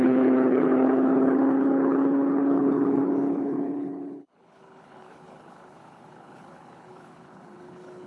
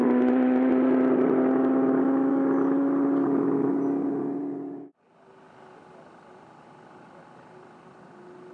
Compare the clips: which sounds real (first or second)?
second